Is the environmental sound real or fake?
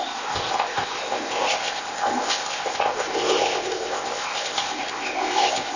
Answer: fake